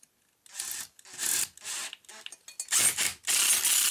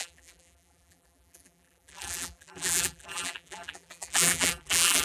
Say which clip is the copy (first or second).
second